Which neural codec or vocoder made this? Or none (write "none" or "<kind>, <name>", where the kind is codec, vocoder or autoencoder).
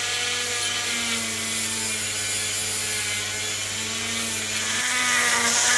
none